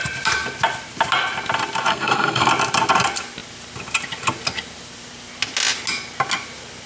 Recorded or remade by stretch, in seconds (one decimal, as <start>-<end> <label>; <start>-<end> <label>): 0.0-1.9 recorded; 1.9-2.5 remade; 2.5-6.9 recorded